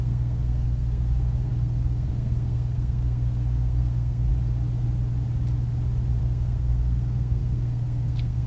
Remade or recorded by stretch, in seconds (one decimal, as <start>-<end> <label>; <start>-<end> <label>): 0.0-4.3 remade; 4.3-6.2 recorded; 6.2-8.5 remade